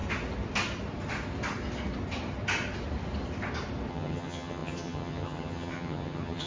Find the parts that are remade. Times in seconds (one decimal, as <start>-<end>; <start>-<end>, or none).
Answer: 3.9-6.5